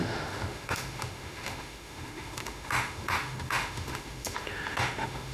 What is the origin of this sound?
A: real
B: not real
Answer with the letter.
B